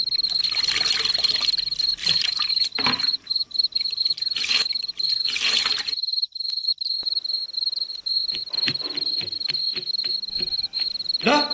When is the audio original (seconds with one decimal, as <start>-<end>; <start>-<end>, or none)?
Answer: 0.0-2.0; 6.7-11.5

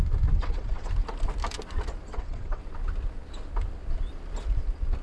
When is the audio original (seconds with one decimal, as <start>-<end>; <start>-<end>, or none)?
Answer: 0.0-0.4; 0.9-2.1; 2.6-5.0

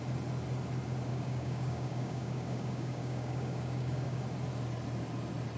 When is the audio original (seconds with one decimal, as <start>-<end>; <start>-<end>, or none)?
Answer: 0.0-1.1; 4.2-5.6